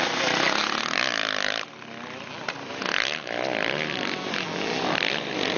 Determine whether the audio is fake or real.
real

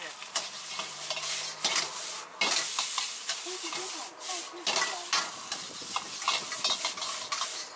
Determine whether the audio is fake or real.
real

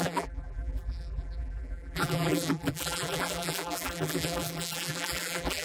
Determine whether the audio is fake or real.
fake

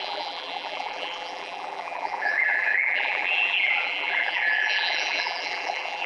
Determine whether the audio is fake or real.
fake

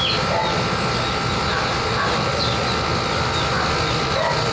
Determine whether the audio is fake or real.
real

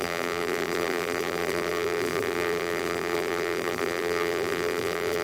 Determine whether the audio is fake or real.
fake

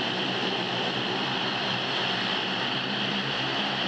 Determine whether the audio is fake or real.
fake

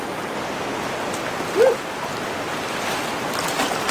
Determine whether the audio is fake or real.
real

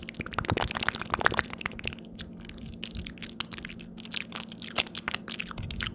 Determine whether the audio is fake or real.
real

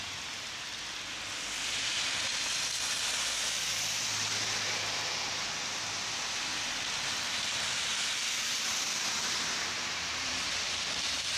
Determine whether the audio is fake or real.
fake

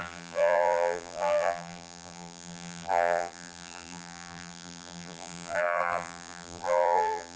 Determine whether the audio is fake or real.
fake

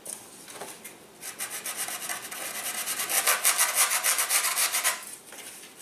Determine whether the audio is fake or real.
real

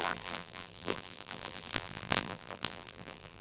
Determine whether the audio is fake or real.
fake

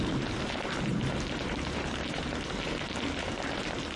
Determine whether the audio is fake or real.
fake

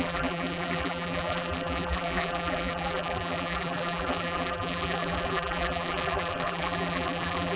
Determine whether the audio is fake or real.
fake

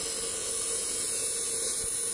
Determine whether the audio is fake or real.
real